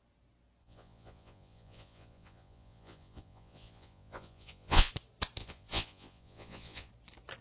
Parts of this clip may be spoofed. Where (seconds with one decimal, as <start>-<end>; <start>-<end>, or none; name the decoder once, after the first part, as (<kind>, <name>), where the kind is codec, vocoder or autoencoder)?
0.6-4.9 (vocoder, Vocos); 5.4-6.9